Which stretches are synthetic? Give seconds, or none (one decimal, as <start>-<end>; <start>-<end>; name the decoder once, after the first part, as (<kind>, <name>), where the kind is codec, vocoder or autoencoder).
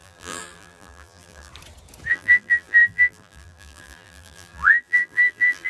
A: 0.0-1.5 (vocoder, BigVGAN v2); 2.1-5.7